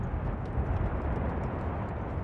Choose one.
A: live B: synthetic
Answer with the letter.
A